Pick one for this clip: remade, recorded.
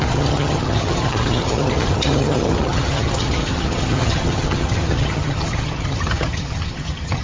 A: remade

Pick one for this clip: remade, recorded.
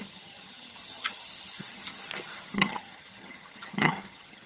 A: remade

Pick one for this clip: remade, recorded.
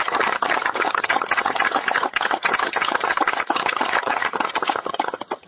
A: remade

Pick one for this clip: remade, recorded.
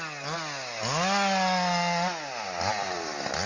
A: recorded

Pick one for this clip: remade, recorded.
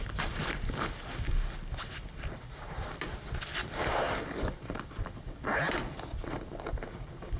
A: recorded